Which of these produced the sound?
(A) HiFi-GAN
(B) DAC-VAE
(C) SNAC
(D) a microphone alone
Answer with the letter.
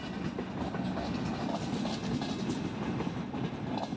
D